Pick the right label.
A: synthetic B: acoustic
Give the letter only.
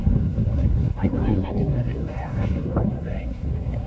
A